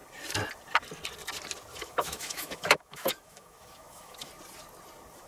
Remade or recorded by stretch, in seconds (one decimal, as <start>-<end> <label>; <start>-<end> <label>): 0.0-1.7 recorded; 1.7-4.3 remade; 4.3-5.3 recorded